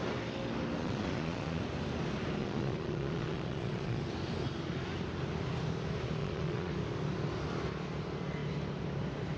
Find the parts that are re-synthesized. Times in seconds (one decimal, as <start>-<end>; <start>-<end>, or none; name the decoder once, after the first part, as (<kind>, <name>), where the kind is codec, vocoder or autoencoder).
0.8-1.6 (vocoder, Vocos); 2.4-4.0; 6.2-6.7